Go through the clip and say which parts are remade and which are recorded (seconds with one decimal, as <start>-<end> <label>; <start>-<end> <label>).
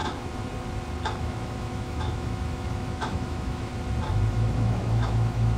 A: 0.0-1.2 recorded; 1.2-3.7 remade; 3.7-4.3 recorded; 4.3-5.6 remade